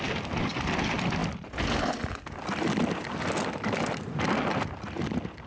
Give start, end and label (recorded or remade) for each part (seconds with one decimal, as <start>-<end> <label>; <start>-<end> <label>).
0.0-5.5 recorded